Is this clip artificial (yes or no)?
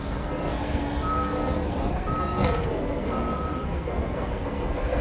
yes